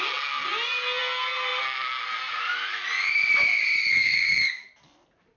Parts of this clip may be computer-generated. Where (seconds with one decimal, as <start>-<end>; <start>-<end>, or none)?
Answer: 3.9-4.7